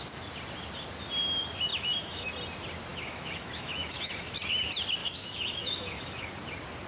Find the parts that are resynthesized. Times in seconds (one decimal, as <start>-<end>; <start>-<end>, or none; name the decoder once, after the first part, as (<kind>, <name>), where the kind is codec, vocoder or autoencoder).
1.7-2.3 (autoencoder, DAC-VAE); 2.9-4.1; 5.0-6.3